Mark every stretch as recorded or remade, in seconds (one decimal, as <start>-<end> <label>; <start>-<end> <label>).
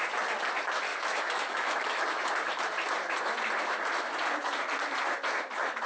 0.0-0.9 recorded; 0.9-2.0 remade; 2.0-5.9 recorded